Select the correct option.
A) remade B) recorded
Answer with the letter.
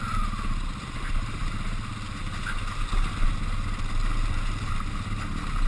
B